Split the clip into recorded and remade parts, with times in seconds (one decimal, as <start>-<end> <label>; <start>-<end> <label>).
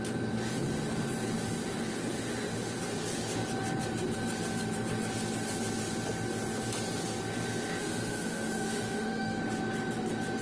0.0-7.8 recorded; 7.8-9.4 remade; 9.4-10.4 recorded